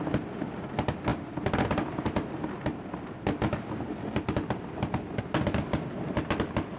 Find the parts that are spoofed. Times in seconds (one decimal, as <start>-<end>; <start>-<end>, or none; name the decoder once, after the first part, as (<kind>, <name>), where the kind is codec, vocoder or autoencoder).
none